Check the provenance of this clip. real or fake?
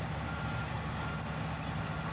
real